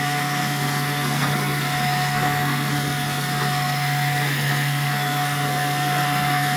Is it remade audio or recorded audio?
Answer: remade